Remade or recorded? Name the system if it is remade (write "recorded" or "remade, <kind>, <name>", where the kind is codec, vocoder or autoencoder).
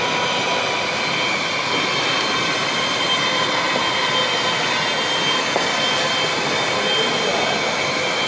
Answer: recorded